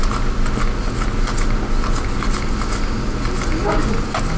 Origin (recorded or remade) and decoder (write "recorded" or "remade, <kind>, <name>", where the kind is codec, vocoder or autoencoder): recorded